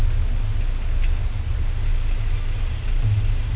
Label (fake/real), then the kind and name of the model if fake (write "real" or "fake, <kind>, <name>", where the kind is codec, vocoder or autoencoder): real